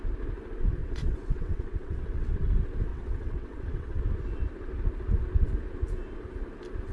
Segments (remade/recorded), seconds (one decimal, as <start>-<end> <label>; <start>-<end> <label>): 0.0-0.8 recorded; 0.8-2.5 remade; 2.5-2.9 recorded; 2.9-4.0 remade; 4.0-6.9 recorded